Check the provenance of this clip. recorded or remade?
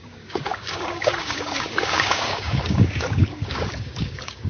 remade